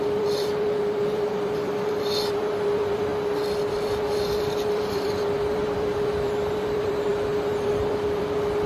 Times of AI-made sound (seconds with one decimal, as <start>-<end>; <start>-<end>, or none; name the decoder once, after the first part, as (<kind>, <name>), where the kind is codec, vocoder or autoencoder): 0.0-3.1 (vocoder, BigVGAN v2); 3.7-8.7